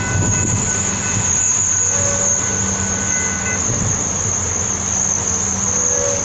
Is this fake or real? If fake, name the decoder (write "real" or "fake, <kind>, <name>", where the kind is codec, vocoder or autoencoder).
real